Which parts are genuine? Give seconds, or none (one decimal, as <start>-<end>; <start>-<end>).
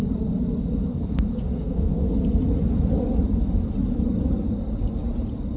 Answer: 0.0-0.9; 2.2-5.6